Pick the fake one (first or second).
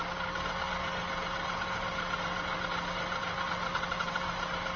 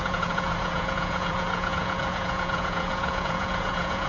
second